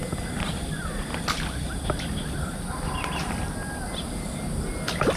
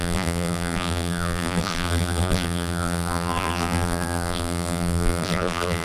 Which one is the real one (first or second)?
first